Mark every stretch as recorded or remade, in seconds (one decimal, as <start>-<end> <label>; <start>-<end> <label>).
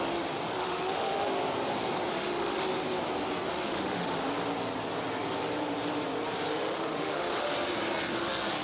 0.0-0.6 recorded; 0.6-1.3 remade; 1.3-2.1 recorded; 2.1-2.7 remade; 2.7-3.5 recorded; 3.5-4.3 remade; 4.3-6.5 recorded; 6.5-7.5 remade; 7.5-8.6 recorded